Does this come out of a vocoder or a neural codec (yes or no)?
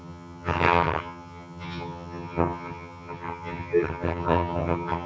yes